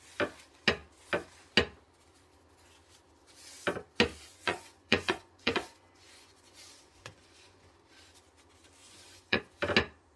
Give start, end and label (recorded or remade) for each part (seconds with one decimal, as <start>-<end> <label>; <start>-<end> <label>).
0.0-4.3 recorded; 4.3-7.7 remade; 7.7-8.8 recorded; 8.8-9.4 remade; 9.4-10.2 recorded

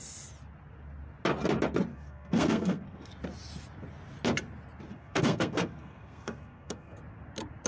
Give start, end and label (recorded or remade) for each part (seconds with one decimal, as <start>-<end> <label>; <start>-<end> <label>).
0.0-1.9 recorded; 1.9-3.1 remade; 3.1-4.9 recorded; 4.9-7.0 remade; 7.0-7.7 recorded

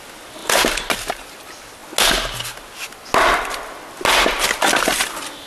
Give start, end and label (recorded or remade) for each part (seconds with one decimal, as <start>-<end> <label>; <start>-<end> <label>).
0.0-5.5 recorded

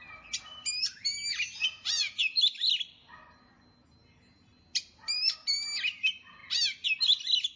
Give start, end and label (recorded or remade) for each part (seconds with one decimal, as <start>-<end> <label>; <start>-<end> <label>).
0.0-1.6 recorded; 1.6-2.4 remade; 2.4-7.6 recorded

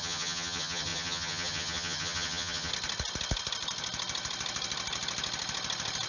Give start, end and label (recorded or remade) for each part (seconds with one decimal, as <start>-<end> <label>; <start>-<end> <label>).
0.0-2.7 remade; 2.7-6.1 recorded